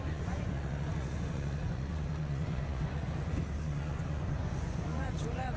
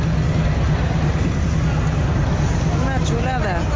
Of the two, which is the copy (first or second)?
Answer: first